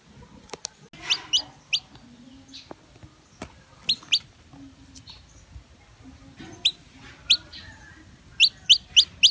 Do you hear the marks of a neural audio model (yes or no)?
no